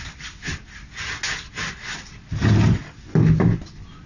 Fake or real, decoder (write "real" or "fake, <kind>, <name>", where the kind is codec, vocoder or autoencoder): real